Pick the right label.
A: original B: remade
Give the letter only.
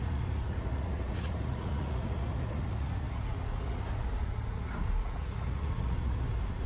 B